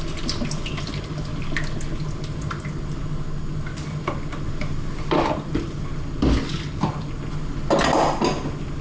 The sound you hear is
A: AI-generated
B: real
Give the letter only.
B